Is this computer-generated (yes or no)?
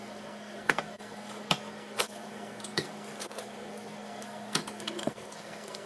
yes